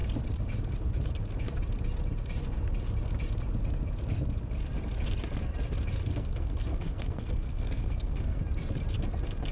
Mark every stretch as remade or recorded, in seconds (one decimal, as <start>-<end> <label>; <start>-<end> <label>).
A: 0.0-6.0 recorded; 6.0-8.4 remade; 8.4-9.5 recorded